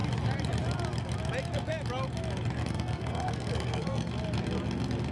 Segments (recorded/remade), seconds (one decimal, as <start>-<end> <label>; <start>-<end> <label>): 0.0-2.6 recorded; 2.6-4.1 remade; 4.1-5.1 recorded